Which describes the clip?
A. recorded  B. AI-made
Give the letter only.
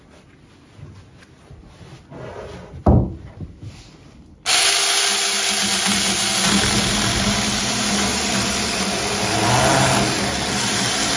A